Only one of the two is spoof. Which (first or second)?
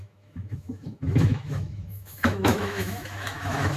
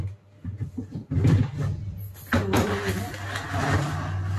first